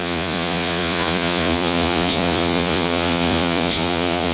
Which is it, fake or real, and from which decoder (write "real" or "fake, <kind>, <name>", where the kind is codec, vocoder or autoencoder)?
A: fake, vocoder, Vocos